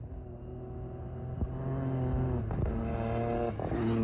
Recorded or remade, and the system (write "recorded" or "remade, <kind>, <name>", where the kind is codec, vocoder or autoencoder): recorded